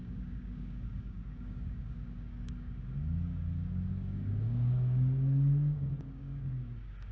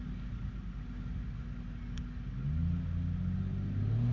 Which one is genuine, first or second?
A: second